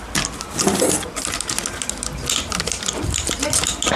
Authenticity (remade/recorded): recorded